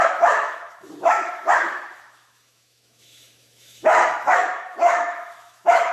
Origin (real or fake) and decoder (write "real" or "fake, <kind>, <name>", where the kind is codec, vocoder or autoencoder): fake, autoencoder, DAC-VAE